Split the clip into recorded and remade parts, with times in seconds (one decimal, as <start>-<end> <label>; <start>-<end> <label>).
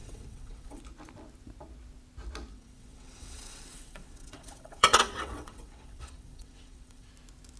0.0-0.8 remade; 0.8-2.5 recorded; 2.5-7.1 remade; 7.1-7.6 recorded